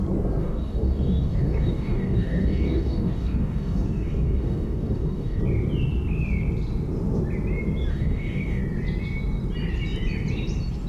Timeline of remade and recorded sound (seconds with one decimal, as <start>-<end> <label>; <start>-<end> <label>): 0.0-0.4 recorded; 0.4-5.4 remade; 5.4-7.9 recorded; 7.9-8.6 remade; 8.6-10.9 recorded